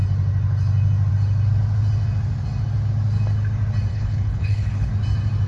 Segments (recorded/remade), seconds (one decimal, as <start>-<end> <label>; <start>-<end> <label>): 0.0-3.9 recorded; 3.9-4.9 remade; 4.9-5.5 recorded